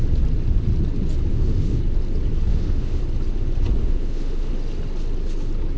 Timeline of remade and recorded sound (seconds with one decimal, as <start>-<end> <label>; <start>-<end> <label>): 0.0-1.3 recorded; 1.3-1.8 remade; 1.8-2.5 recorded; 2.5-3.0 remade; 3.0-3.8 recorded; 3.8-4.5 remade; 4.5-5.8 recorded